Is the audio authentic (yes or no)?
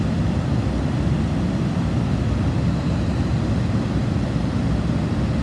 yes